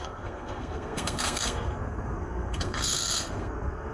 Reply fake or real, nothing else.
fake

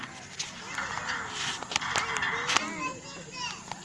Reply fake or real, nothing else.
real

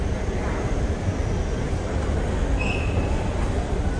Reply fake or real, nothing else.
real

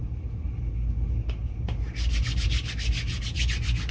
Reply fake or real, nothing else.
real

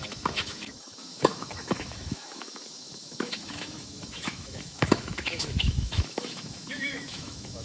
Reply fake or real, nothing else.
fake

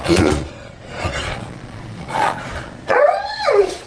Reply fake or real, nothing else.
fake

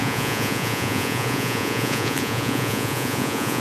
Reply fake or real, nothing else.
fake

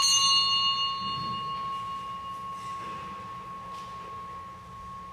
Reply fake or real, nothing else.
real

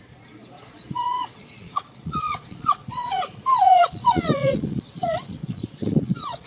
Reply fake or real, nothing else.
fake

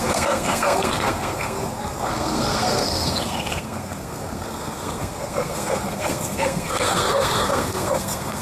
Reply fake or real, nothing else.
fake